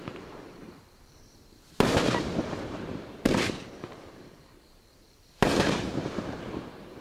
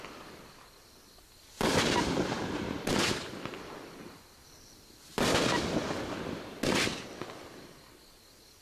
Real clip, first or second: second